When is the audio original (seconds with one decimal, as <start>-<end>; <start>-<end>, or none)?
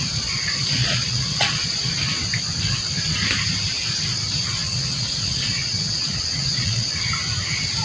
0.0-0.8; 1.9-4.6; 6.9-7.8